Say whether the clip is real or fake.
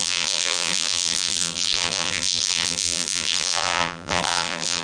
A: fake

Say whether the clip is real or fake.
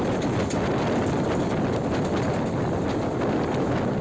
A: real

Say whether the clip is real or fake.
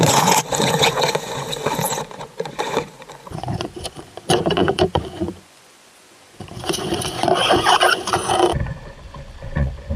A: fake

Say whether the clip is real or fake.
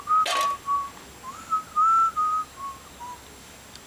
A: real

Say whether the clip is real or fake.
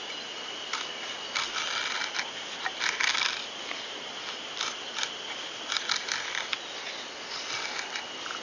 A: real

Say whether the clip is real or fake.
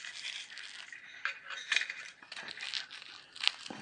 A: real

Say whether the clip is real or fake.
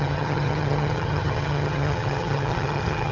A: fake